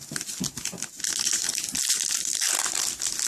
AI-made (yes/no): no